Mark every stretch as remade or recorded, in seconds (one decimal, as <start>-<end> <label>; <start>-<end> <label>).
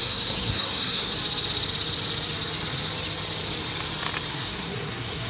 0.0-1.1 remade; 1.1-4.3 recorded; 4.3-5.3 remade